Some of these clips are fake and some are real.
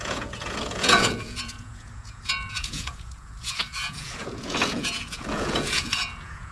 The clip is fake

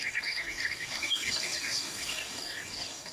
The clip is fake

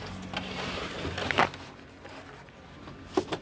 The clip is real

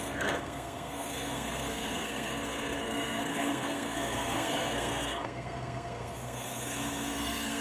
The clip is fake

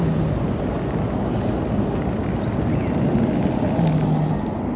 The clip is real